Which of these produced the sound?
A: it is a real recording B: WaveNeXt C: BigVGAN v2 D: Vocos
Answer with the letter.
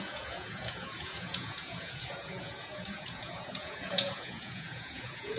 D